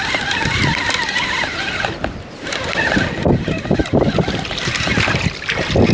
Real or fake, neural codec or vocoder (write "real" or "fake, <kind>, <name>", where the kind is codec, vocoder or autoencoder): real